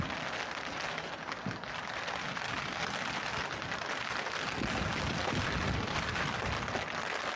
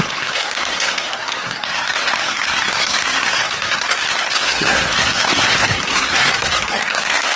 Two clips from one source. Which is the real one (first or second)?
first